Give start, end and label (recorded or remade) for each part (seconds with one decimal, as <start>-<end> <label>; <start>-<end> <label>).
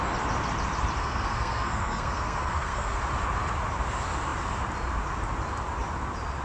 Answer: 0.0-1.0 recorded; 1.0-3.0 remade; 3.0-6.4 recorded